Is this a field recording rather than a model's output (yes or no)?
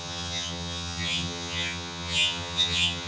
no